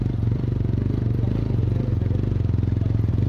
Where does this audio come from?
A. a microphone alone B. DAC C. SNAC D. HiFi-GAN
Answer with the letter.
A